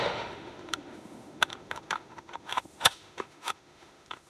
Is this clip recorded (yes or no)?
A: no